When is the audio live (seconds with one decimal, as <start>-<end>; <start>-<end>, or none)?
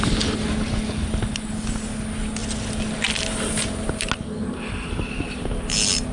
0.0-6.1